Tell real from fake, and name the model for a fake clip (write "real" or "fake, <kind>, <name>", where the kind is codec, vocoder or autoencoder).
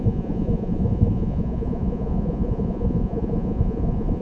fake, vocoder, Vocos